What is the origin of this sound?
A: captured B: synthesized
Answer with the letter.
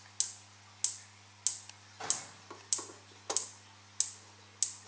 A